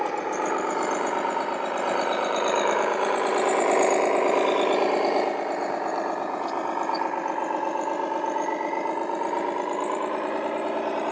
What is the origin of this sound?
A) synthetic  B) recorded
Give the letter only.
A